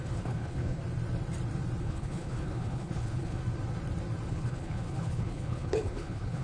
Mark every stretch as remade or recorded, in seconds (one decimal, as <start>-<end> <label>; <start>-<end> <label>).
0.0-0.8 remade; 0.8-1.8 recorded; 1.8-3.4 remade; 3.4-4.3 recorded; 4.3-6.4 remade